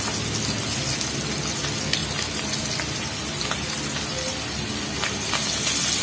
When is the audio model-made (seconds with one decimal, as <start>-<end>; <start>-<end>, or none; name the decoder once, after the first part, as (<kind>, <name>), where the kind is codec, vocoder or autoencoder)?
2.0-5.6 (vocoder, BigVGAN v2)